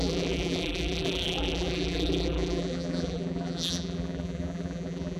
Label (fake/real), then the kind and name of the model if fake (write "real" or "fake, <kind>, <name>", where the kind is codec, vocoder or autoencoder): fake, vocoder, BigVGAN v2